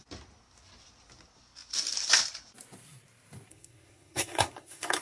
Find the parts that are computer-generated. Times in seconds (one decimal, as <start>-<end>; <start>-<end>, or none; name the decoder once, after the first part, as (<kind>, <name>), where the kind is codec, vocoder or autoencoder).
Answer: 3.5-5.0 (codec, SNAC)